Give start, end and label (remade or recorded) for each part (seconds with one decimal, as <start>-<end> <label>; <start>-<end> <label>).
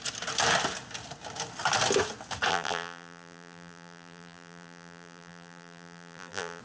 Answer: 0.0-2.5 recorded; 2.5-6.6 remade